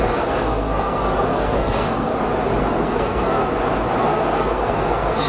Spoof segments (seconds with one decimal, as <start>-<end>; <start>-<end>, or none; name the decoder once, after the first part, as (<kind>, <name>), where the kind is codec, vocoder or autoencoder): 0.0-2.1 (codec, SNAC); 2.6-3.4; 4.0-5.3